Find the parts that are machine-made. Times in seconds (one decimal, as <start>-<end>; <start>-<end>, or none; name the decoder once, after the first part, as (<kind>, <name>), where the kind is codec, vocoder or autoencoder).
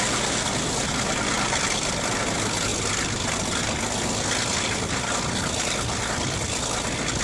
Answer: none